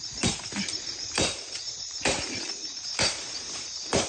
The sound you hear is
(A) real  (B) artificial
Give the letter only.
B